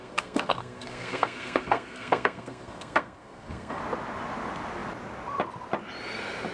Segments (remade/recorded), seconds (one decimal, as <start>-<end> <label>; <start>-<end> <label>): 0.0-3.8 remade; 3.8-6.5 recorded